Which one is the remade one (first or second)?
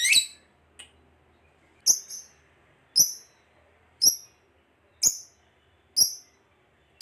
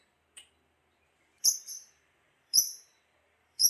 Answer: second